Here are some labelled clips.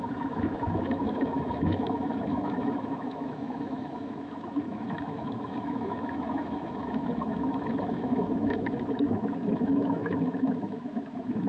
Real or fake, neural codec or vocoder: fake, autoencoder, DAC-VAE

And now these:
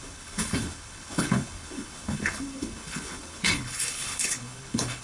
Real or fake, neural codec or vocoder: fake, codec, HILCodec